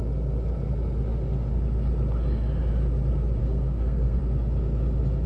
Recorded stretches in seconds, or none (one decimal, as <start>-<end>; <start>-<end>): 0.0-3.4; 4.2-5.3